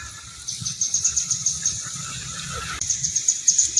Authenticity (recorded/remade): recorded